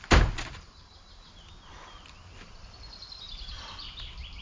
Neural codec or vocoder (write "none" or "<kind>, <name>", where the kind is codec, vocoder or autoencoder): none